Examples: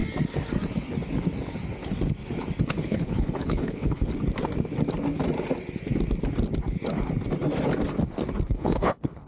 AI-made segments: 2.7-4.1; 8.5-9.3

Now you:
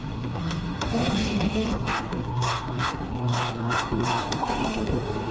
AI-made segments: 0.0-5.3

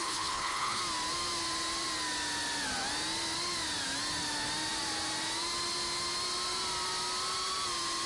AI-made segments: 0.0-0.8

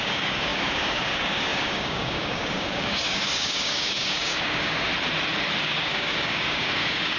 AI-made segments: 0.0-4.9; 5.6-7.2

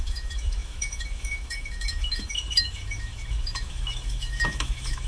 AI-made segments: 0.0-5.1